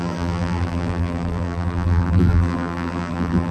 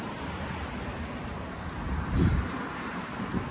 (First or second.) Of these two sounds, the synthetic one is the first